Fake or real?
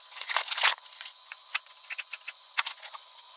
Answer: fake